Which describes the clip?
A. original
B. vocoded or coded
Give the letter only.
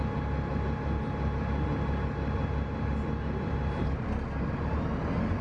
A